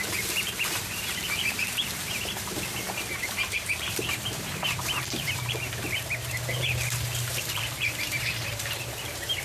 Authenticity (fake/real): fake